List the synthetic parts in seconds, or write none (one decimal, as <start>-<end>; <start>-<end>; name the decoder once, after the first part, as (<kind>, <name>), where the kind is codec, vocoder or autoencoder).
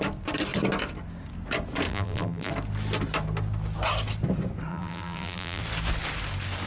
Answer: 1.9-2.5 (vocoder, BigVGAN v2); 4.7-5.6